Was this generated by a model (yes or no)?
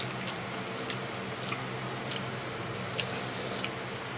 no